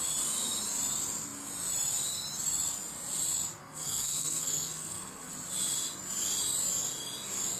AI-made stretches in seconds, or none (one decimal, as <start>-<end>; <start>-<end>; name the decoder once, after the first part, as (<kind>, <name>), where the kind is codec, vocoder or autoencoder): 3.6-5.3 (codec, SNAC)